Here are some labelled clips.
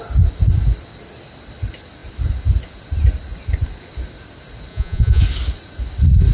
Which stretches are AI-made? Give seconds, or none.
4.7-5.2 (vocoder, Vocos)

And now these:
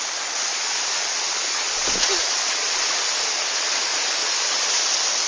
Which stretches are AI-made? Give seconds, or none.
0.5-3.7 (vocoder, Vocos); 4.2-4.8

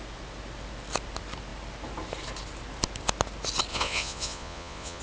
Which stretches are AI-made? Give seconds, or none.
3.7-5.0 (vocoder, Vocos)